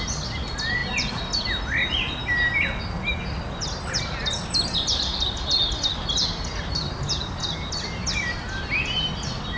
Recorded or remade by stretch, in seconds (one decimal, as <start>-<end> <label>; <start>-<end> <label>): 0.0-9.6 recorded